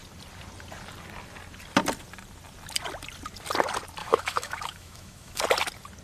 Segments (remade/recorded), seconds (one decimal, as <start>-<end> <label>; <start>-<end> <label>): 0.0-4.0 recorded; 4.0-5.4 remade; 5.4-6.0 recorded